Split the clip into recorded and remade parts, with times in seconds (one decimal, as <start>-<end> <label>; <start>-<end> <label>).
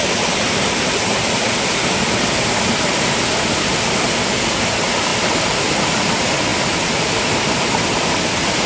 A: 0.0-8.7 recorded